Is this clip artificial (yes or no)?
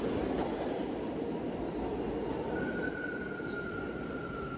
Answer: no